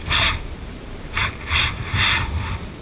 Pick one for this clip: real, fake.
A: fake